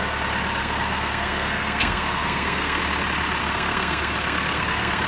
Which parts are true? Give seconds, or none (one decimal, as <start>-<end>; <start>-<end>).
0.0-0.6; 2.8-3.4